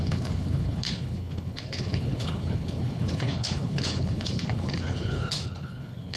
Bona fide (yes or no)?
no